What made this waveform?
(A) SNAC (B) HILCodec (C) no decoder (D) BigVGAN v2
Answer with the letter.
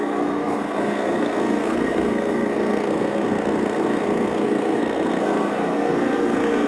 A